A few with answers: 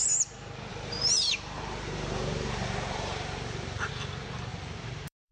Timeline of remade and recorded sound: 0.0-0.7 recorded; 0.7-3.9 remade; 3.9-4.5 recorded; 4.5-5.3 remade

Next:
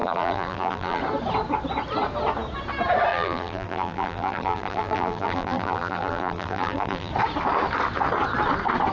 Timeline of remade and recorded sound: 0.0-1.0 remade; 1.0-3.1 recorded; 3.1-7.1 remade; 7.1-8.9 recorded

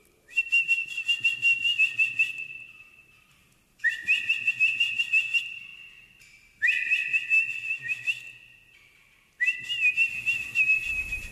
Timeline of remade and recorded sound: 0.0-0.8 remade; 0.8-3.8 recorded; 3.8-5.7 remade; 5.7-9.9 recorded; 9.9-11.3 remade

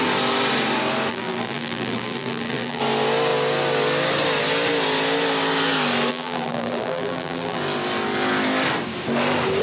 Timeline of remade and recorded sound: 0.0-1.1 recorded; 1.1-2.8 remade; 2.8-6.1 recorded; 6.1-7.6 remade; 7.6-9.6 recorded

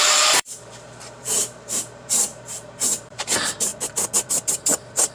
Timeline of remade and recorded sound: 0.0-3.7 remade; 3.7-4.3 recorded; 4.3-5.1 remade

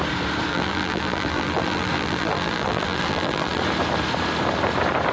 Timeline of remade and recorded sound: 0.0-0.5 recorded; 0.5-3.6 remade; 3.6-5.1 recorded

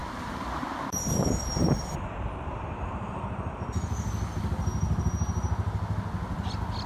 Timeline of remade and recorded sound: 0.0-3.7 remade; 3.7-6.9 recorded

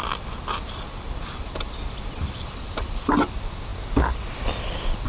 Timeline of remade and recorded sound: 0.0-5.1 recorded